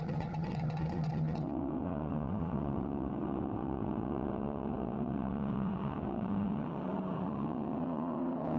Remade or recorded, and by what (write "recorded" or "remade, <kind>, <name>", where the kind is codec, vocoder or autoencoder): remade, vocoder, WaveNeXt